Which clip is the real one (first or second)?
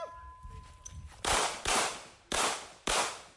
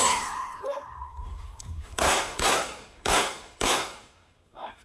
first